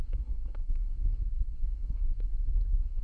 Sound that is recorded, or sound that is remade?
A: remade